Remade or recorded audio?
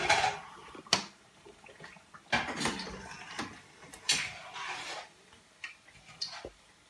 recorded